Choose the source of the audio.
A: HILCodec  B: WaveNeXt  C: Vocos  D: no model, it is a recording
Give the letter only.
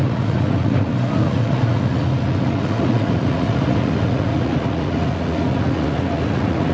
C